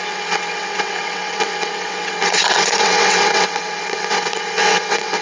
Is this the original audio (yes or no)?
no